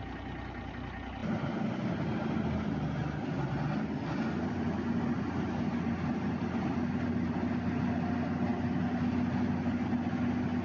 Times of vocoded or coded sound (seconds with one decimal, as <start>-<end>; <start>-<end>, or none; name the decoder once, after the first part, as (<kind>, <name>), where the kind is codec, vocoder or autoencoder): none

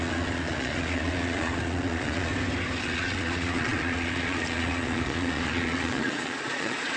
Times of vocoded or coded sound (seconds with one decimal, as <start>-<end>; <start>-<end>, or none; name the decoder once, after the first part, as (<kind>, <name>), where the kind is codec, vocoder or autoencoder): 0.0-2.3 (vocoder, Vocos); 2.8-7.0